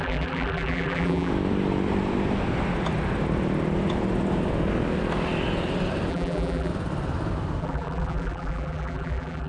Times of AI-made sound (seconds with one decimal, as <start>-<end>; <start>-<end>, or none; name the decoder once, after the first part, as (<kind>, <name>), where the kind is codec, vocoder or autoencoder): 0.0-1.3 (vocoder, BigVGAN v2); 6.1-6.7; 7.6-9.5